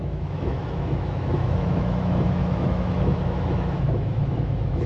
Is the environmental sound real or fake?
fake